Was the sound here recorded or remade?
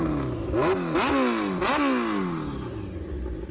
recorded